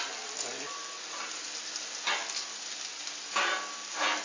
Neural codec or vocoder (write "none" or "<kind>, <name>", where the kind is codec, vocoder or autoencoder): none